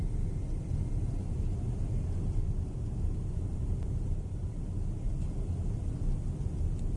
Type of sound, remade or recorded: recorded